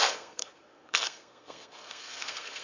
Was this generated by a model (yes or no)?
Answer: yes